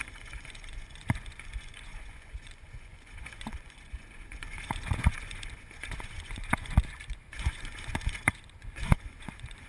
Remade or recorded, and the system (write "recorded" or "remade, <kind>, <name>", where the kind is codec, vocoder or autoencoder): remade, vocoder, Vocos